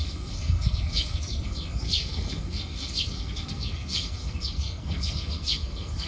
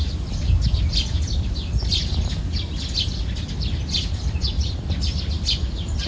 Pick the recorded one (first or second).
second